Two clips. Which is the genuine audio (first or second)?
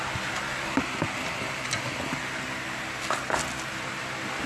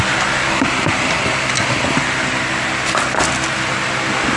first